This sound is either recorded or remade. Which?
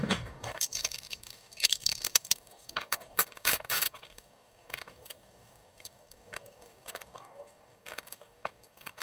remade